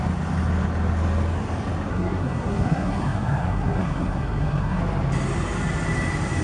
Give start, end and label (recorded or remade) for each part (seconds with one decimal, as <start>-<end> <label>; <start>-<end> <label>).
0.0-1.9 recorded; 1.9-4.8 remade; 4.8-6.4 recorded